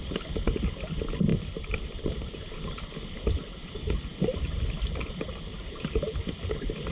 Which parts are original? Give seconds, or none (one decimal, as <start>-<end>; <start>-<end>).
0.0-1.3; 2.7-6.9